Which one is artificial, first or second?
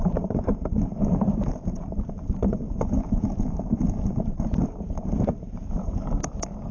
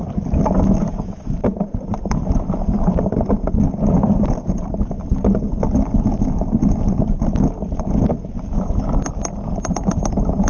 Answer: first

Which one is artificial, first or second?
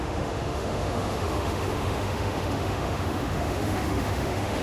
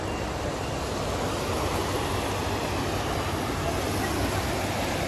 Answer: first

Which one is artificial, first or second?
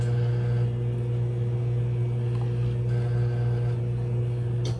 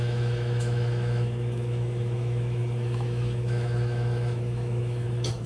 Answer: second